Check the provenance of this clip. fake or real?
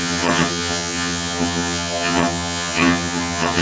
fake